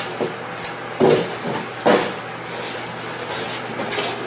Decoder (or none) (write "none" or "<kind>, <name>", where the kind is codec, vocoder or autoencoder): none